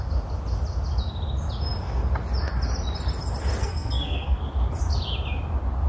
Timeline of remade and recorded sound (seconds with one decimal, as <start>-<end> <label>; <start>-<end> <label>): 0.0-3.6 recorded; 3.6-4.4 remade; 4.4-5.9 recorded